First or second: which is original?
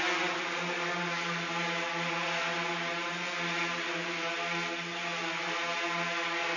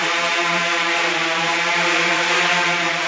first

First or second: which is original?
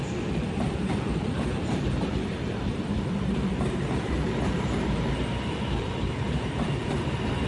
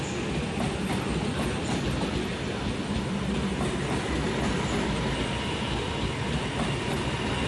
second